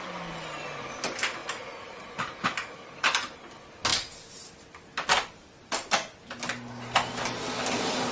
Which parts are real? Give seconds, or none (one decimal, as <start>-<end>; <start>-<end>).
0.0-8.1